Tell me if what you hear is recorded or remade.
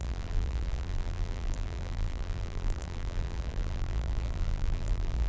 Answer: remade